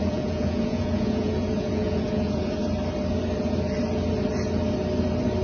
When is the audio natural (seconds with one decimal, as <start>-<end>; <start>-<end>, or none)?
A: 2.6-5.4